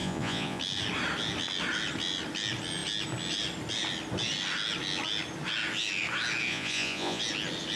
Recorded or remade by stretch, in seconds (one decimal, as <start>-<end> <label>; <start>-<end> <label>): 0.0-0.6 remade; 0.6-6.5 recorded; 6.5-7.2 remade; 7.2-7.8 recorded